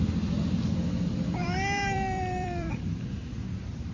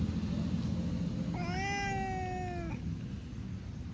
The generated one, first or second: first